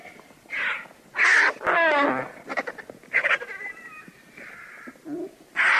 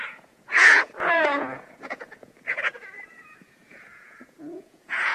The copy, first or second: second